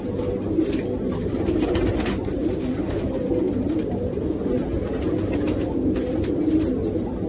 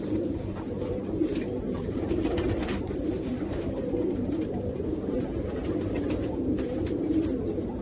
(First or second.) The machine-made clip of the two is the second